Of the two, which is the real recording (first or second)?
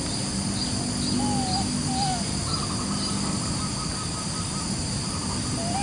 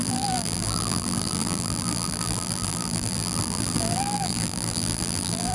first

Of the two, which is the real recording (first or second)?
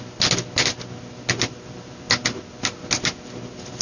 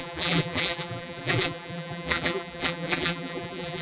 first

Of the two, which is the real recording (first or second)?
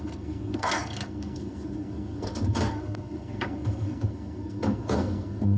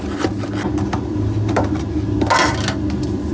second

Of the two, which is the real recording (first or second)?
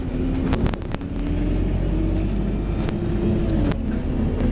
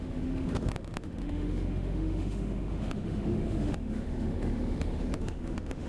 first